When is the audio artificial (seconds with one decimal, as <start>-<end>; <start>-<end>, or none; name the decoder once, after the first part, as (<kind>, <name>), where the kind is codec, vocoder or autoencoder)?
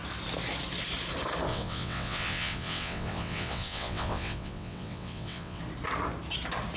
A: 1.5-5.6 (vocoder, WaveNeXt)